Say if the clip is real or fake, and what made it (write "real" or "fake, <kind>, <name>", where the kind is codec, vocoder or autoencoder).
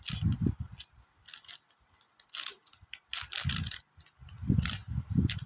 real